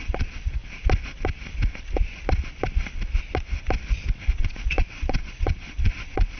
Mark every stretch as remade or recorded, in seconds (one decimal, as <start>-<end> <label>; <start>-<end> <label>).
0.0-0.6 remade; 0.6-4.4 recorded; 4.4-6.4 remade